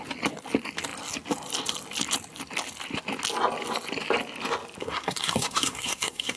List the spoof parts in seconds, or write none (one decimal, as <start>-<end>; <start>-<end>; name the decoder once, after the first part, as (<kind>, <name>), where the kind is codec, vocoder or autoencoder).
4.8-6.4 (codec, SNAC)